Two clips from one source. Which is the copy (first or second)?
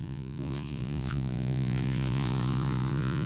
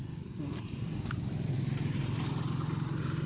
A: first